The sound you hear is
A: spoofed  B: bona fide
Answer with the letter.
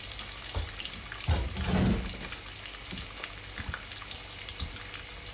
B